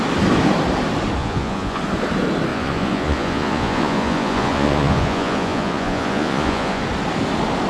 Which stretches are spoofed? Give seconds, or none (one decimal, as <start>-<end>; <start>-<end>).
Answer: 1.2-1.8; 2.5-6.8